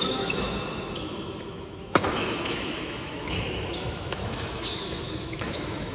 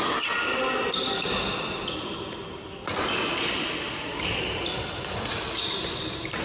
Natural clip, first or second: second